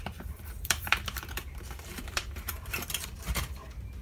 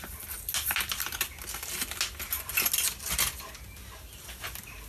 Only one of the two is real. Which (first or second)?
second